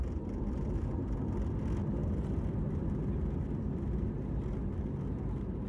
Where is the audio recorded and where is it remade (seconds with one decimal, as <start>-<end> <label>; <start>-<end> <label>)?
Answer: 0.0-5.7 recorded